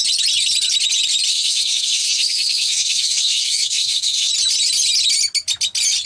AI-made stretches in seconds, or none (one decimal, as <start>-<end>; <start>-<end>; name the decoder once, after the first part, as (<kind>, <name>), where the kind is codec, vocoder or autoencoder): 1.3-4.3 (codec, SNAC)